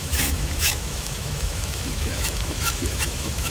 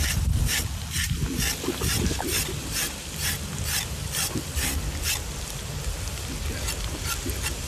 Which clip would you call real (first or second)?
second